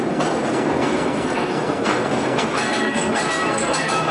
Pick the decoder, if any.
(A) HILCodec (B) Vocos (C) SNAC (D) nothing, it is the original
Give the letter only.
C